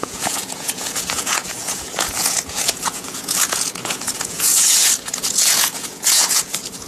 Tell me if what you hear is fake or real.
fake